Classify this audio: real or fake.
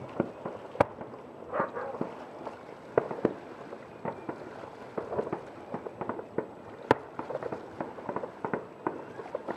real